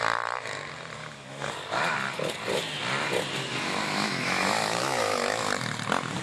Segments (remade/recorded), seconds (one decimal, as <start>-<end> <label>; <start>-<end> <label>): 0.0-1.0 recorded; 1.0-1.5 remade; 1.5-3.8 recorded; 3.8-5.5 remade; 5.5-6.2 recorded